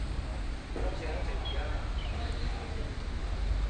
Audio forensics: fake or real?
real